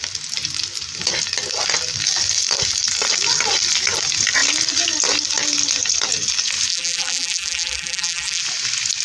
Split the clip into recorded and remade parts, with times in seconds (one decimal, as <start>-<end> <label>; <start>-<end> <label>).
0.0-6.7 recorded; 6.7-8.4 remade; 8.4-9.0 recorded

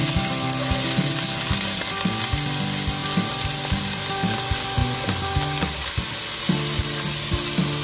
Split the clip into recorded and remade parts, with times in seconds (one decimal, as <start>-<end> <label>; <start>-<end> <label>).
0.0-7.8 recorded

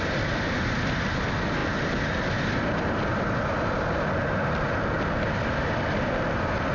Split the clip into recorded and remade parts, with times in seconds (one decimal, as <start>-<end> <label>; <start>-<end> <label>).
0.0-6.7 recorded